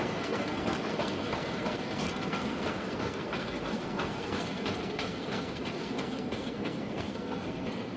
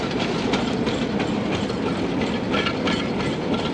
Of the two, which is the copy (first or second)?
first